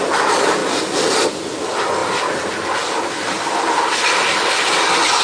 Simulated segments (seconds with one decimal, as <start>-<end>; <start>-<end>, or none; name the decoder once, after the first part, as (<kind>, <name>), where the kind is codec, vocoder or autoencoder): none